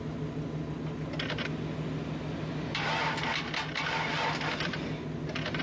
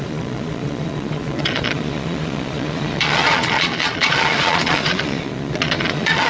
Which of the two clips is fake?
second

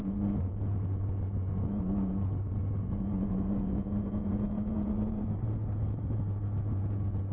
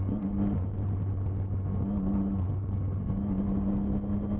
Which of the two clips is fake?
first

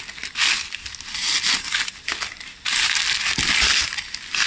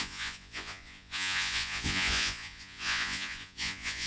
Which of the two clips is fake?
second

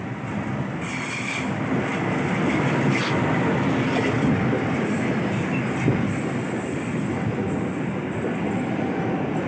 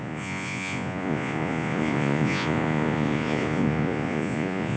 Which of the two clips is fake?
second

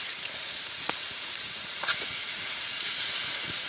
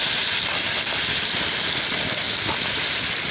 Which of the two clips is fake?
first